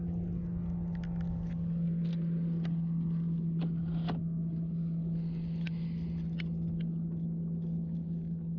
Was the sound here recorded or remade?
recorded